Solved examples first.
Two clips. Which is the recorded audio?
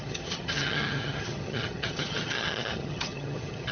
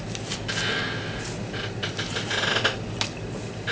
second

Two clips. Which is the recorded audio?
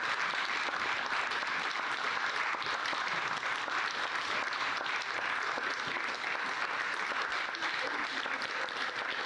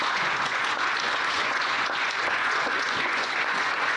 first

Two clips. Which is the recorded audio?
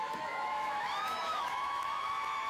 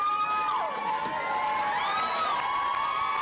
second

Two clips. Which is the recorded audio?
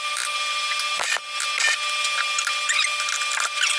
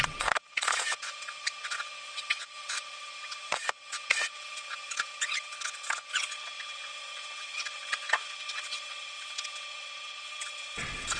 first